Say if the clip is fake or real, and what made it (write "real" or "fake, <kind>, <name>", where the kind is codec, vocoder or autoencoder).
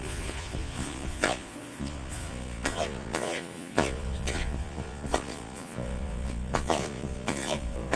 fake, vocoder, Vocos